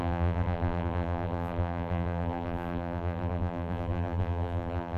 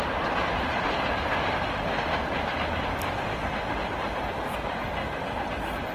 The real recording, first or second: second